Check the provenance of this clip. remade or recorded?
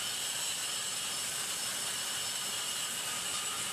recorded